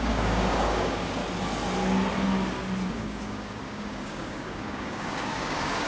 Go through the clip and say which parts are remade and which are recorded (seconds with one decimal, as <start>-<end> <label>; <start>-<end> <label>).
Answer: 0.0-1.2 remade; 1.2-2.9 recorded; 2.9-5.9 remade